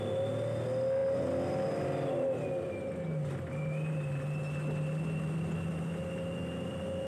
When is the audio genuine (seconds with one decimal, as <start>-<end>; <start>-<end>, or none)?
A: 0.0-7.1